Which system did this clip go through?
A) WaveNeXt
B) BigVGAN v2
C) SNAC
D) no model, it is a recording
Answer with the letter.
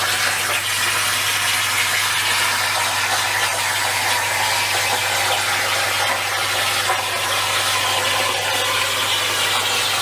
D